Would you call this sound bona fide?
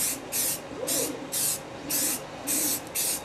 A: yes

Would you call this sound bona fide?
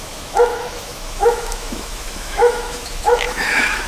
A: no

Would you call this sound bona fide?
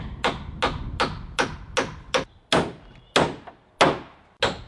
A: yes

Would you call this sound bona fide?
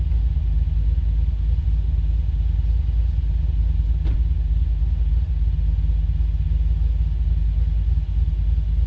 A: yes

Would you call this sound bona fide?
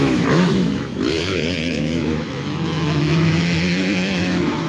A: no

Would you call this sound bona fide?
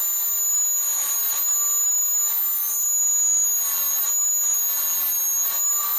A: yes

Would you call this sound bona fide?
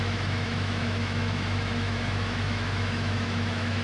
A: no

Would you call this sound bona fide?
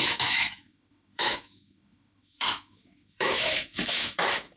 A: no